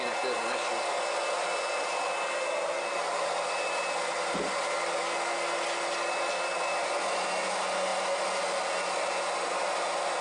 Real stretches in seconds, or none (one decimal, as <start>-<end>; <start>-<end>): 0.0-10.2